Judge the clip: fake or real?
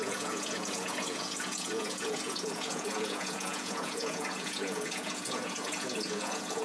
fake